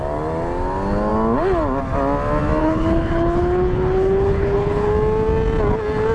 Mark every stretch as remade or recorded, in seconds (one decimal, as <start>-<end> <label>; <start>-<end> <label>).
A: 0.0-2.6 recorded; 2.6-4.9 remade; 4.9-6.1 recorded